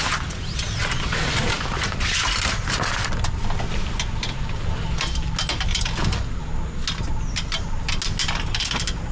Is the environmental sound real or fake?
real